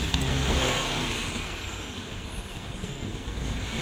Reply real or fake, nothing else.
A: fake